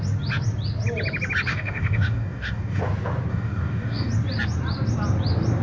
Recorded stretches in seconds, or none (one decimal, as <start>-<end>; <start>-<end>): 0.0-1.5; 2.8-3.3; 4.1-5.6